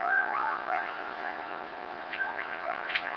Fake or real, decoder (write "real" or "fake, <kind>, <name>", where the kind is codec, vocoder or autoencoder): fake, vocoder, Vocos